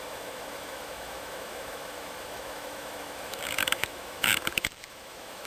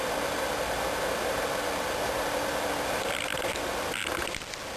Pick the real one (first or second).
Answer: second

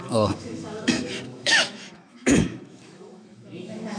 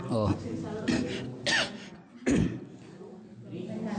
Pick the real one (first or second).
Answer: second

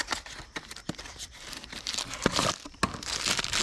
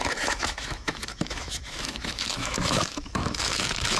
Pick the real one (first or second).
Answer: first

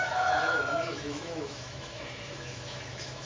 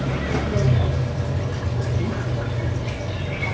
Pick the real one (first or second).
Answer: second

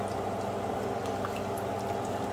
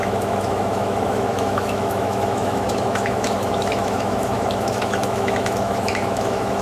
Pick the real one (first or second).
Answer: first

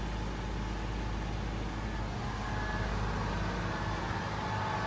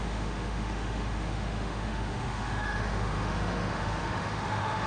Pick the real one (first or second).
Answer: first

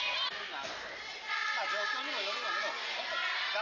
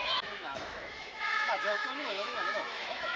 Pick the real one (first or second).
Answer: first